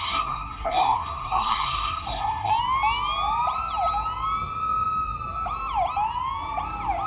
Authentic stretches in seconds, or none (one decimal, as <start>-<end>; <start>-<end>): 2.5-7.1